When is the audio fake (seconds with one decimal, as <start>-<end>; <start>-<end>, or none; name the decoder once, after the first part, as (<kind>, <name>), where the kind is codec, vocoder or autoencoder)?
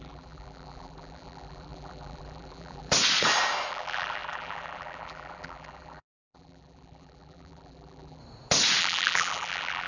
0.0-2.9 (vocoder, BigVGAN v2); 3.7-8.2; 8.8-9.9